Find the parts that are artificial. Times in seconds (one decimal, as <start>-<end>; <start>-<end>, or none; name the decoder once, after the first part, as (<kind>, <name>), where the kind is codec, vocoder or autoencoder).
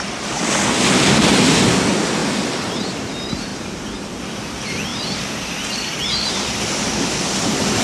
2.2-3.1 (vocoder, BigVGAN v2); 3.5-4.2